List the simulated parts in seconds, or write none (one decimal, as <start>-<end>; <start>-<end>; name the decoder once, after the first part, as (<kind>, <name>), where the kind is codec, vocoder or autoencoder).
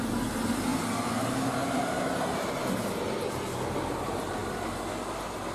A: none